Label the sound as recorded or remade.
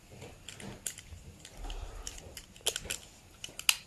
recorded